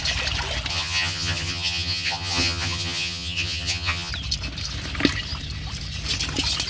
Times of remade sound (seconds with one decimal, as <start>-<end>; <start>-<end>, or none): 0.7-4.1